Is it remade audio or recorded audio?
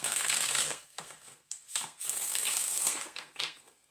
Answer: remade